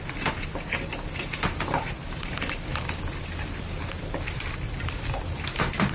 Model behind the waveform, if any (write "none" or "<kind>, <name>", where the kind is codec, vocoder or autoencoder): none